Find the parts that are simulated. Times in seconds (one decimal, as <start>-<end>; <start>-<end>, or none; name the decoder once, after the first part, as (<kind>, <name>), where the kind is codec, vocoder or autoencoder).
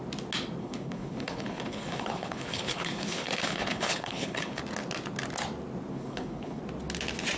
0.6-4.6 (codec, HILCodec); 5.9-6.6